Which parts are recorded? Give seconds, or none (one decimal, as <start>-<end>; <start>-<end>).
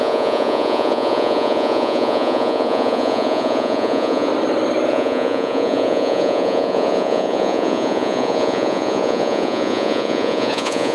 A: 4.3-4.9